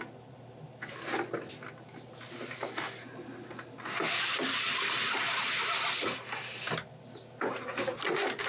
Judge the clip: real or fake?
real